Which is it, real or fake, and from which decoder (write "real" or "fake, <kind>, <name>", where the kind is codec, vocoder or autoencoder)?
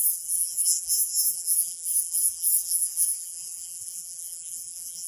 fake, vocoder, BigVGAN v2